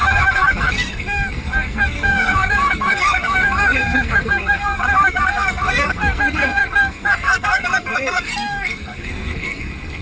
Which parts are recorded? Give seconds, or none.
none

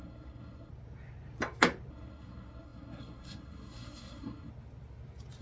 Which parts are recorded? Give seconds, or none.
0.7-1.9; 4.5-5.4

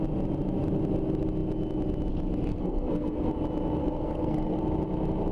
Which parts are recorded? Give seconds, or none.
0.0-2.5; 3.3-3.8; 4.6-5.3

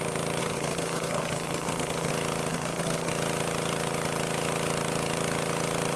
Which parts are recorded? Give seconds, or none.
0.0-0.4; 2.1-2.5; 3.1-6.0

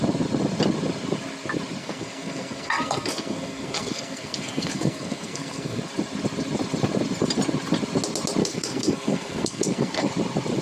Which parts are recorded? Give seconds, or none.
0.0-1.8; 5.8-8.4; 10.1-10.6

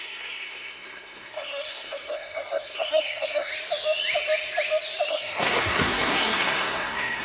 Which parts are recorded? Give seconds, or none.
3.5-5.1

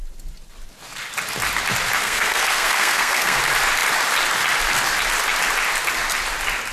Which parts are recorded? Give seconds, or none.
0.0-2.0; 3.4-6.7

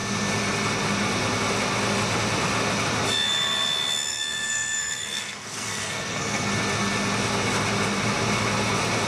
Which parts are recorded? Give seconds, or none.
0.0-4.1; 6.5-9.1